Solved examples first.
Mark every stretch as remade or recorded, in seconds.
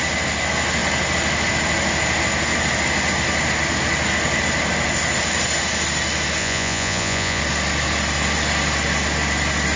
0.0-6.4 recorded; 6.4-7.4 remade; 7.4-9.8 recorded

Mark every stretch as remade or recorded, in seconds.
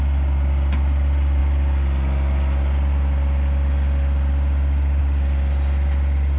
0.0-6.4 recorded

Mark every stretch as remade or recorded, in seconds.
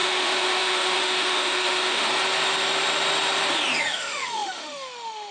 0.0-2.1 remade; 2.1-3.8 recorded; 3.8-5.3 remade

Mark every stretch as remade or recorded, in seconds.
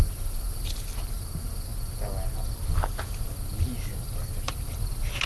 0.0-5.3 recorded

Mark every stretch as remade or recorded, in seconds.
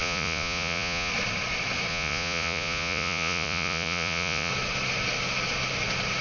0.0-1.1 remade; 1.1-1.9 recorded; 1.9-4.5 remade; 4.5-6.2 recorded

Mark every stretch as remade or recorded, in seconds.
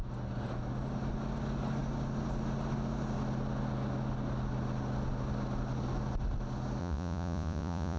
0.0-6.8 recorded; 6.8-8.0 remade